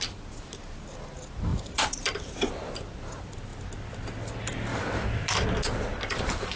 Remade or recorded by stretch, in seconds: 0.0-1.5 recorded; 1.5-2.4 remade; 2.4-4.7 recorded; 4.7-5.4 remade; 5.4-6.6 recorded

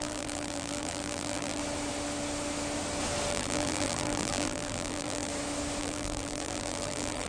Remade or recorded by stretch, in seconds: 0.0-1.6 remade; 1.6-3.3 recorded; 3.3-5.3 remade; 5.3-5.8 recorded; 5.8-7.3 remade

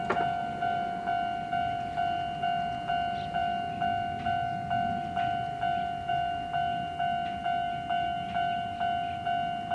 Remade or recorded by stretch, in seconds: 0.0-9.7 recorded

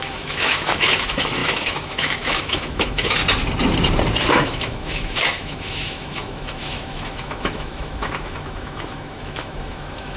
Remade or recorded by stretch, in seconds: 0.0-3.2 remade; 3.2-4.3 recorded; 4.3-10.2 remade

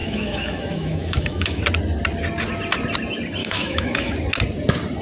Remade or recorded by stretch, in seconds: 0.0-1.6 remade; 1.6-3.4 recorded; 3.4-4.1 remade; 4.1-5.0 recorded

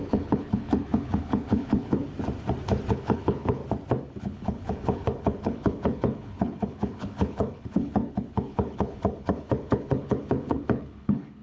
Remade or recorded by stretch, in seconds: 0.0-2.0 remade; 2.0-2.9 recorded; 2.9-3.6 remade; 3.6-4.2 recorded; 4.2-11.4 remade